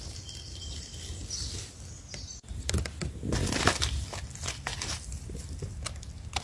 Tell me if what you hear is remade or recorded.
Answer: recorded